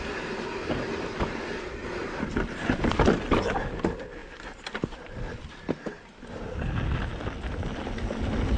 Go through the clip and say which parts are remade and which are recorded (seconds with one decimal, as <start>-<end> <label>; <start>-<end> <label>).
0.0-8.6 recorded